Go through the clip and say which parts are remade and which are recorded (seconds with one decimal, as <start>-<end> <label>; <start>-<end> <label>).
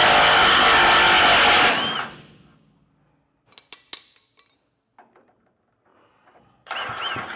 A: 0.0-7.4 recorded